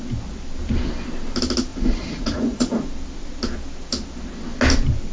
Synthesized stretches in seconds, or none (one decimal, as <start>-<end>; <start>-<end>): 1.7-2.9